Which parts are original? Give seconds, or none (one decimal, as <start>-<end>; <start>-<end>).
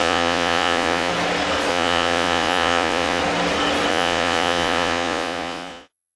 1.1-1.7; 3.2-3.9